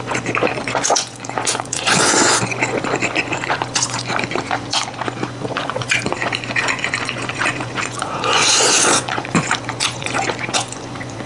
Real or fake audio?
fake